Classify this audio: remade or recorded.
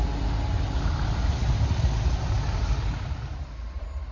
recorded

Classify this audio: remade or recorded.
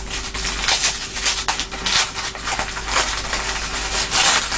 recorded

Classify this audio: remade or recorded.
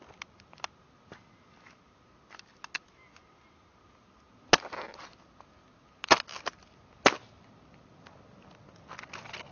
recorded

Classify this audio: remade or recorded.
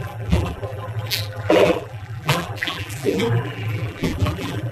remade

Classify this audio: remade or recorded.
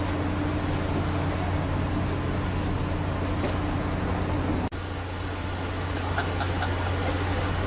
recorded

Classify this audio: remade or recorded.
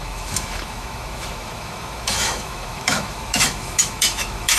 remade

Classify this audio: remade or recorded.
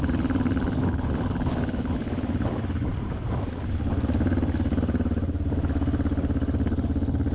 recorded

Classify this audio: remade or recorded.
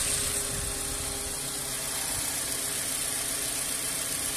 recorded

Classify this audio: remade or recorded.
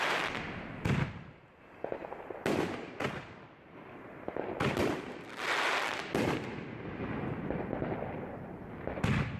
recorded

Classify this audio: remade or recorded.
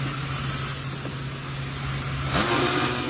recorded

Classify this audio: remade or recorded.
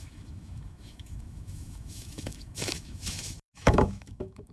remade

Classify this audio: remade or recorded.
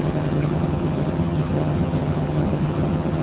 remade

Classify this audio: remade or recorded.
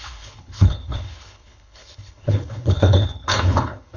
remade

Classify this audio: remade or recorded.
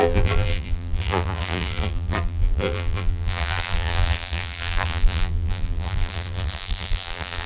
remade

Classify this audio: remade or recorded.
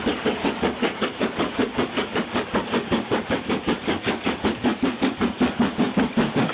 remade